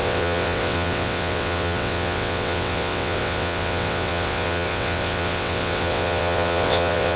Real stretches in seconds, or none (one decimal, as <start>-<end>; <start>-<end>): none